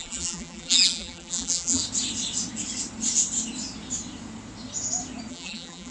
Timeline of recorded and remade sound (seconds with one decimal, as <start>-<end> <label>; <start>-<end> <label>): 0.0-1.8 remade; 1.8-5.3 recorded; 5.3-5.9 remade